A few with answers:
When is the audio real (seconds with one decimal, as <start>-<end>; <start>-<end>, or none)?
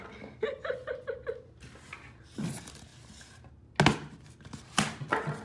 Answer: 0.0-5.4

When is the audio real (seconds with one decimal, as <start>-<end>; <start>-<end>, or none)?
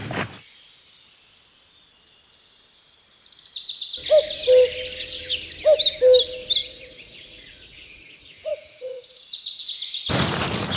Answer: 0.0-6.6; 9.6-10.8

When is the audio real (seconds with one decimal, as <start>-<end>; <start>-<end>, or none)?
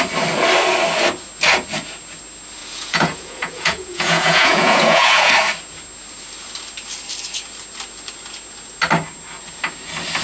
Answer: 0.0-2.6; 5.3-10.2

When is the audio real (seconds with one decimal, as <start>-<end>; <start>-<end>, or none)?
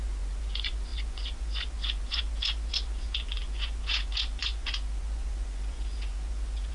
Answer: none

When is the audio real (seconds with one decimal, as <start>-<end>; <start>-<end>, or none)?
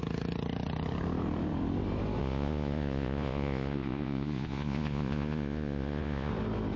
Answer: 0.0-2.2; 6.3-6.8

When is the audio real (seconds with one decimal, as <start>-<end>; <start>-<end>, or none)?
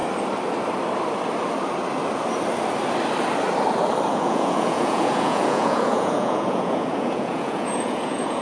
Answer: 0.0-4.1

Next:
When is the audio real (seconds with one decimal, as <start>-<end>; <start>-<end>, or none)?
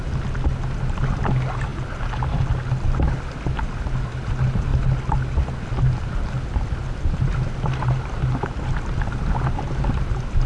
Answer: 0.0-10.5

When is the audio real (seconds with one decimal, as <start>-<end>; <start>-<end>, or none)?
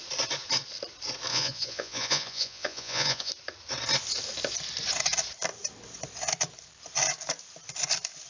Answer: 0.0-1.3; 3.3-8.3